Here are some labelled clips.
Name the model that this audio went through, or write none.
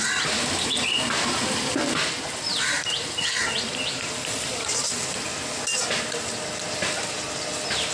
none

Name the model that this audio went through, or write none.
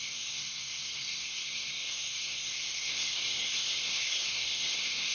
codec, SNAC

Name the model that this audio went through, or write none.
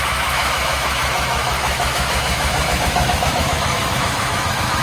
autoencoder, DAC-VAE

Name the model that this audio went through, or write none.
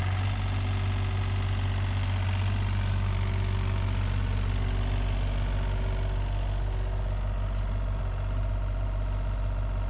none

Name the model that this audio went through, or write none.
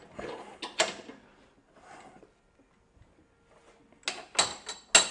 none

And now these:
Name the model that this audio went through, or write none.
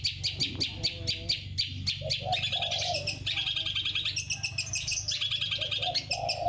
none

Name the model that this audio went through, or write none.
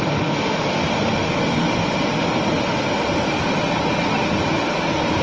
none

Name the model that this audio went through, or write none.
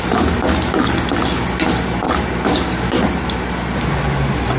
none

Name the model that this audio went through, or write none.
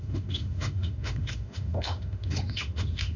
autoencoder, DAC-VAE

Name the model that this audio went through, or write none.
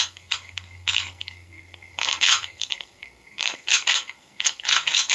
codec, SNAC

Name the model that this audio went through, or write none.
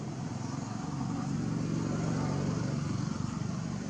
none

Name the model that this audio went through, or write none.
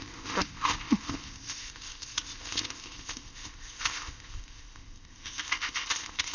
codec, ZipCodec